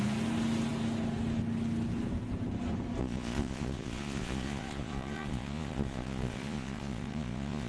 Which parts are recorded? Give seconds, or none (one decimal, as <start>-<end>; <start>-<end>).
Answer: 0.0-3.0